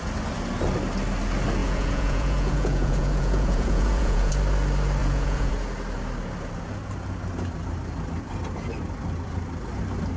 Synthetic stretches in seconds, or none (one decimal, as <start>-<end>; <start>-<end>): 1.6-4.3; 5.0-5.5